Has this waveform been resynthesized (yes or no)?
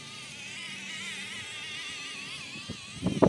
no